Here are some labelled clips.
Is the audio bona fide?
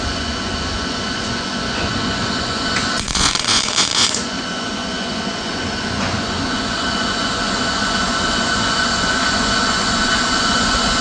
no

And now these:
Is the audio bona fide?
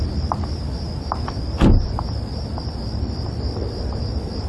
yes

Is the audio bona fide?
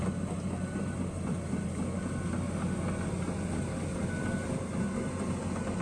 yes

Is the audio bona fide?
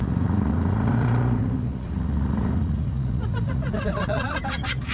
no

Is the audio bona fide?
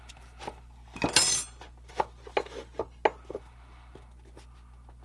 yes